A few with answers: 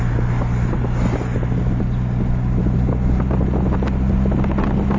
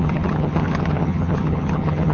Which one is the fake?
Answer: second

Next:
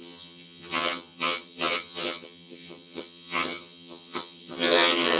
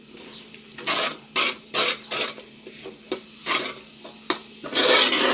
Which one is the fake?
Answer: first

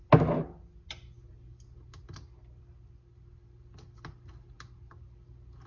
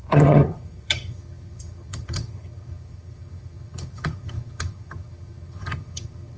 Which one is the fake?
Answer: second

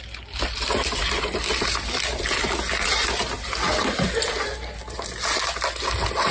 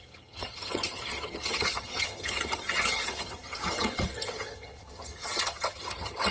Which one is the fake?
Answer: second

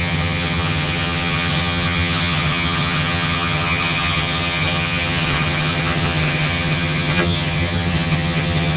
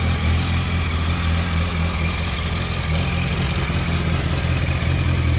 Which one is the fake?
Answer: first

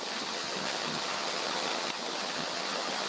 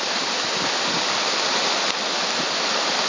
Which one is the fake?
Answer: first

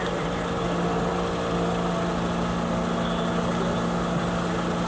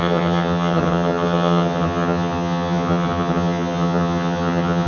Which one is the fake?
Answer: second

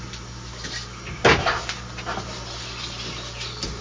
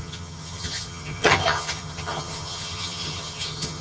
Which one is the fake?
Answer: second